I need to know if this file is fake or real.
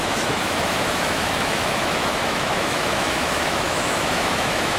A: fake